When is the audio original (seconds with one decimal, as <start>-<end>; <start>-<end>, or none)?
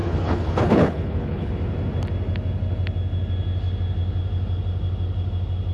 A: 1.5-5.7